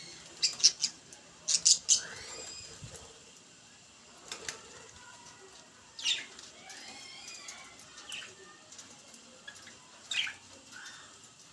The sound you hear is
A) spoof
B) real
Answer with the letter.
B